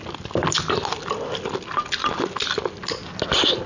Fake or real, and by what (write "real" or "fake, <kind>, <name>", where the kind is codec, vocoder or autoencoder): real